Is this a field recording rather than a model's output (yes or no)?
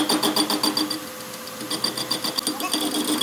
yes